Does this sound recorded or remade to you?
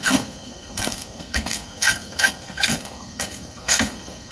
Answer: remade